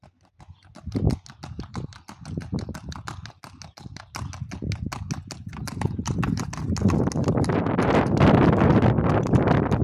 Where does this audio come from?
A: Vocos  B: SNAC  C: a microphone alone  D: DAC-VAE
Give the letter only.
C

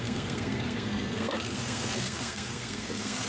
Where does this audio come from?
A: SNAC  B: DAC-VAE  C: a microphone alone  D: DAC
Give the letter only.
A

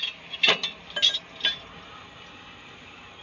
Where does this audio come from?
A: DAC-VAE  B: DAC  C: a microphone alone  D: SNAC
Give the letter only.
C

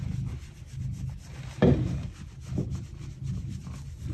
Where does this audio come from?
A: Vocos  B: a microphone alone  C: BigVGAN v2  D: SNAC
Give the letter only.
B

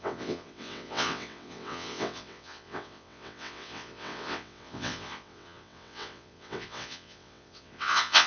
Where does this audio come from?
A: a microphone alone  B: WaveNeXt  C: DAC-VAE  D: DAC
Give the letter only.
B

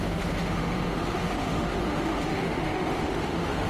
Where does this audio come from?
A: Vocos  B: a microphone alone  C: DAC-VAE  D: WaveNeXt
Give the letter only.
C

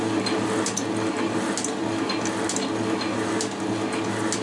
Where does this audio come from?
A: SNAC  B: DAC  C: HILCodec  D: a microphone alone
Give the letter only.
D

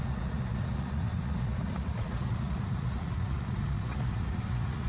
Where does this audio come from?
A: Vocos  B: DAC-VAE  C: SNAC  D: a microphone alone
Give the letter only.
A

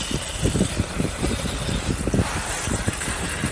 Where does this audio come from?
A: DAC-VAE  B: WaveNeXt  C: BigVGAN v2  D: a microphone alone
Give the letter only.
C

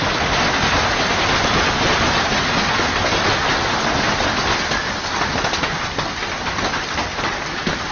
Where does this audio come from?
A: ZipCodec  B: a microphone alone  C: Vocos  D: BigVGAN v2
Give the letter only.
B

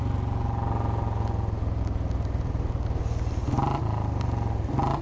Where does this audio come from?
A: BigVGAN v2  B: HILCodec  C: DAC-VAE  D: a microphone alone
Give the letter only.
D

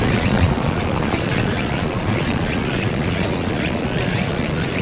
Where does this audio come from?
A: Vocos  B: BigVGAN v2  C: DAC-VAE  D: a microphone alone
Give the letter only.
A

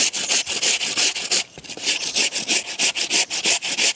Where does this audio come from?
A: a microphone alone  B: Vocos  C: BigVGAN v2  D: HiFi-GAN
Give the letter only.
A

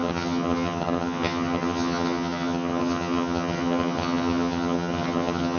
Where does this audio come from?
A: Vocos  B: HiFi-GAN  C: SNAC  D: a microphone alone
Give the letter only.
B